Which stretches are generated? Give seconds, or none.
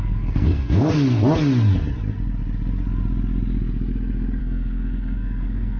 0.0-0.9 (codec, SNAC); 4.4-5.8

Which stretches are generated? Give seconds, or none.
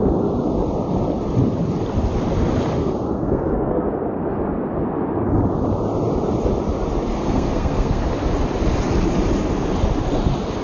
2.8-3.9 (codec, SNAC); 7.1-8.1